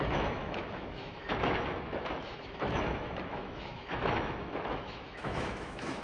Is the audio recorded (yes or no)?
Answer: no